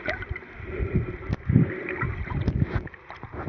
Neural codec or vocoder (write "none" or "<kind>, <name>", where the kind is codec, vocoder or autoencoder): vocoder, BigVGAN v2